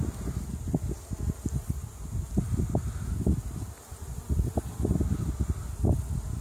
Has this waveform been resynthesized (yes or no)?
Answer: no